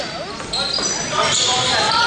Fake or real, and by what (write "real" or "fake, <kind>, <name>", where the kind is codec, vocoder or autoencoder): fake, vocoder, BigVGAN v2